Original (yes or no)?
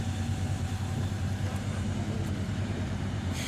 no